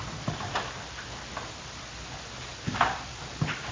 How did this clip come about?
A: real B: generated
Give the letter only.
A